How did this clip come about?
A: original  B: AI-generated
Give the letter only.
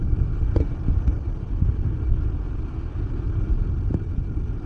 A